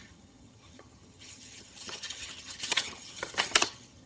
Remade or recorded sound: remade